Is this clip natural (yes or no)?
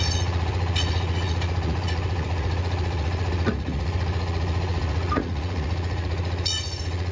no